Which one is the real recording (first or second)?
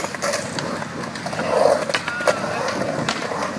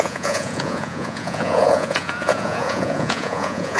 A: first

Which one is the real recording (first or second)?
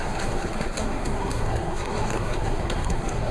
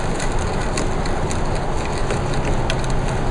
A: second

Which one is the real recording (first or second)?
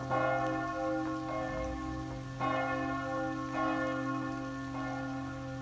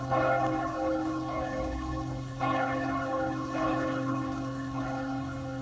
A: first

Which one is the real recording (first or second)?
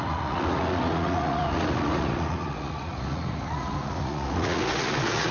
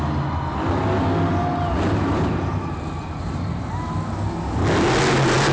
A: second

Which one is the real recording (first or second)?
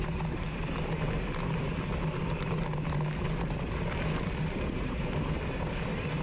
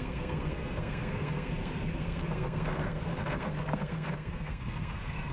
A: first